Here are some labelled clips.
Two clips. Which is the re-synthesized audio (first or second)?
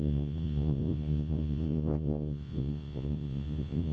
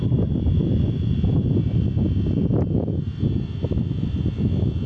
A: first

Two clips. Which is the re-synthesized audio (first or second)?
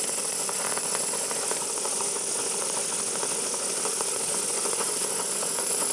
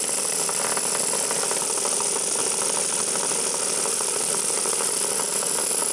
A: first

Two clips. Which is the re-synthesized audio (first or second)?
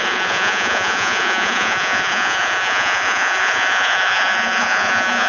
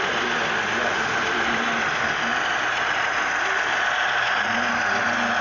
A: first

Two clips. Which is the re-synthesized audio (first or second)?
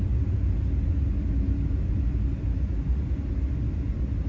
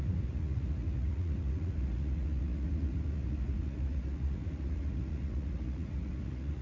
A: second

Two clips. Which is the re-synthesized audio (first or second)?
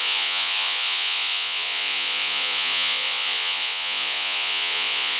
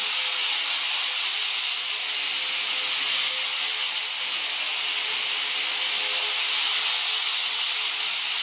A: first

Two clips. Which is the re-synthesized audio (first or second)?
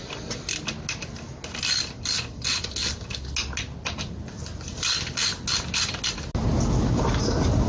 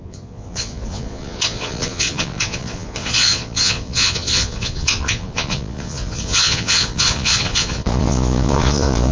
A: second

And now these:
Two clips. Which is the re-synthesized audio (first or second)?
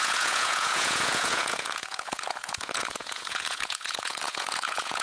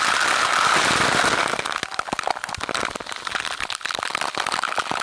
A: first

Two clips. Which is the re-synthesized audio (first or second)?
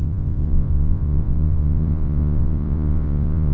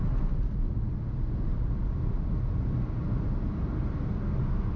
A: first